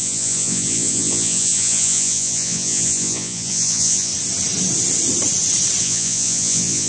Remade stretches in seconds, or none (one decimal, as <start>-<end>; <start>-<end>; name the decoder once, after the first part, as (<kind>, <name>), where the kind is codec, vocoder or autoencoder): 0.0-4.1 (vocoder, Vocos); 5.8-6.9